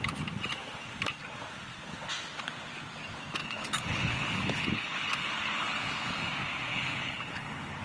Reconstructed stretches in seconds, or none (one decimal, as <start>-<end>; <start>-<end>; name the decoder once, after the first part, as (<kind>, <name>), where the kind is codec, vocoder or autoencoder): 3.4-6.3 (codec, HILCodec); 6.7-7.8